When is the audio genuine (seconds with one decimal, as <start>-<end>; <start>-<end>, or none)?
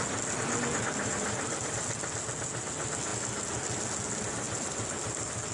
0.0-5.5